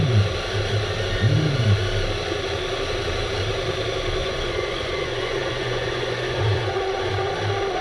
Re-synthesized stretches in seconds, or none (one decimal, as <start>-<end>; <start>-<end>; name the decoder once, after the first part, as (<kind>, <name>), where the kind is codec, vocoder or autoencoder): 4.2-7.3 (vocoder, Vocos)